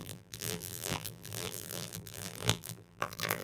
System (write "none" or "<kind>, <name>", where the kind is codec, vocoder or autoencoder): vocoder, BigVGAN v2